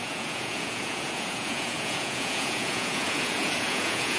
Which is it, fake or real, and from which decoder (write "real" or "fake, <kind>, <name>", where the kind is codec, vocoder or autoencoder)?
fake, vocoder, Vocos